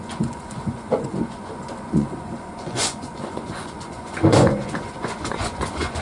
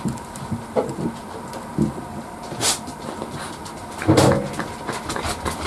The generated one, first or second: first